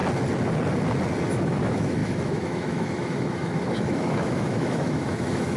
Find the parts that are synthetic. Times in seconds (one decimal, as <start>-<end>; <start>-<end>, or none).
1.3-5.6